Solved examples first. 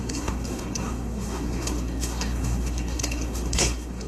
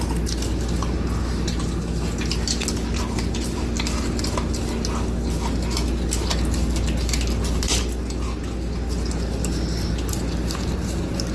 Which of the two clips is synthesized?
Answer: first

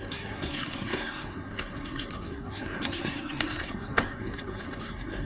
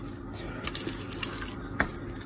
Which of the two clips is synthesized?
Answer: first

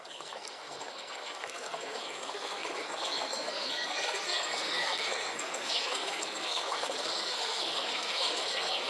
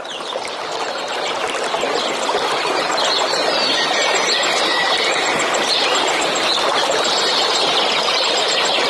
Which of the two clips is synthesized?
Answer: first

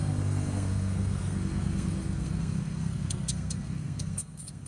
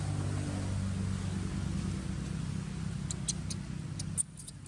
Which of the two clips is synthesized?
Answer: first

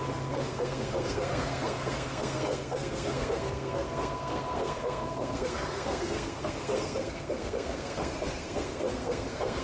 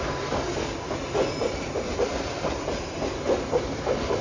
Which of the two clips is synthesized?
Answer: first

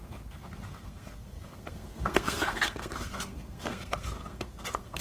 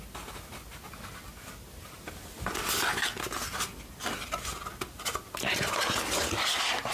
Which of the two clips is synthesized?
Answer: first